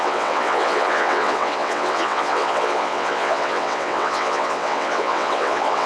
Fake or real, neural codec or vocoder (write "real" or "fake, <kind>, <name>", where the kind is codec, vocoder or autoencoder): fake, vocoder, WaveNeXt